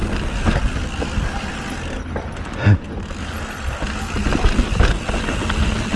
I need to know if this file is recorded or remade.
recorded